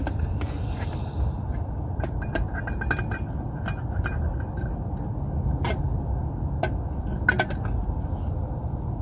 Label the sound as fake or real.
real